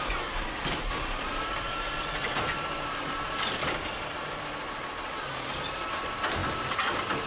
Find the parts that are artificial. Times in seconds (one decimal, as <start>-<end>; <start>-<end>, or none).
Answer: none